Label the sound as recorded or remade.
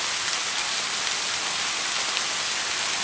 recorded